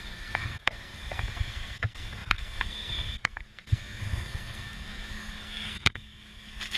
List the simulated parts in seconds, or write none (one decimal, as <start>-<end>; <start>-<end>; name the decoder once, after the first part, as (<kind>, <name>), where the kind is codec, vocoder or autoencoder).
0.0-6.8 (codec, SNAC)

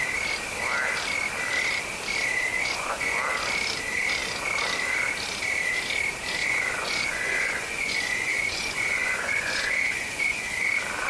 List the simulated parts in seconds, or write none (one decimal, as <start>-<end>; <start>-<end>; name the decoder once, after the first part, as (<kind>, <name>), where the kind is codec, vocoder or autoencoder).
2.5-3.2 (vocoder, Vocos); 6.4-10.7

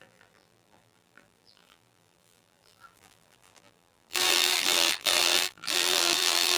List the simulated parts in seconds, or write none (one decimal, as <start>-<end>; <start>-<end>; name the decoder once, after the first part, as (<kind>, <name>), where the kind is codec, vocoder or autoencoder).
0.0-6.6 (vocoder, BigVGAN v2)